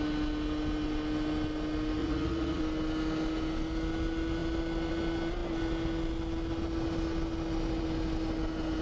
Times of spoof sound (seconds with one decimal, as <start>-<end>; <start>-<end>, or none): 2.0-2.6